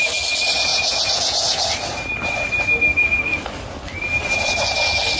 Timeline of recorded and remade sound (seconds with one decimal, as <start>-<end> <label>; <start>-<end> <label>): 0.0-0.7 recorded; 0.7-1.7 remade; 1.7-5.2 recorded